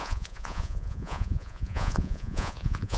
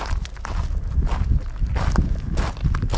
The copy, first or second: first